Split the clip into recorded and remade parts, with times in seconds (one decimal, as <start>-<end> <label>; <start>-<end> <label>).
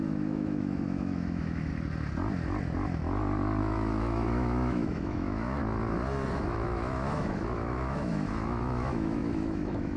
0.0-1.7 remade; 1.7-3.6 recorded; 3.6-5.6 remade; 5.6-6.3 recorded; 6.3-10.0 remade